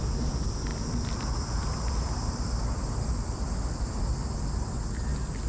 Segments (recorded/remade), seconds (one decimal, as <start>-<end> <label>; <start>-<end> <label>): 0.0-0.7 recorded; 0.7-4.0 remade; 4.0-5.5 recorded